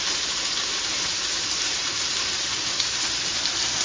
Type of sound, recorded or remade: remade